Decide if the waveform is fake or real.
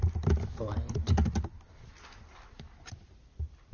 fake